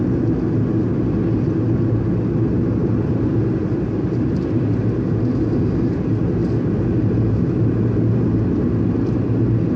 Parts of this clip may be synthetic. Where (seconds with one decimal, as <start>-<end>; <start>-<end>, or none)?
none